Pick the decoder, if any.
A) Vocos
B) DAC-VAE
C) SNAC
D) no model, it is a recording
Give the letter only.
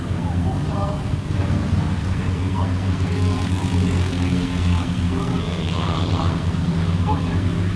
C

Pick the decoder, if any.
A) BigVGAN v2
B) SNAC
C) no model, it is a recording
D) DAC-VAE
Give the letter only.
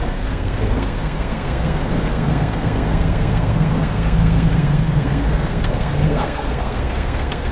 B